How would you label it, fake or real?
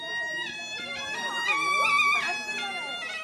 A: real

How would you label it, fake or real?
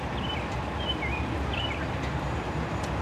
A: real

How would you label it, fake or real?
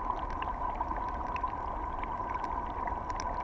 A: real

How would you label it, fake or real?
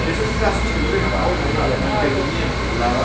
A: real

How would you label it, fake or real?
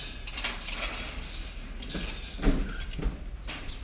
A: real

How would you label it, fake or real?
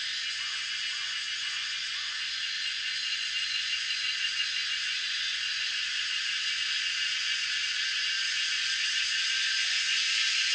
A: fake